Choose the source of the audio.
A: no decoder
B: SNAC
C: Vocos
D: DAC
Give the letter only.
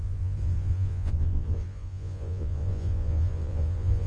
C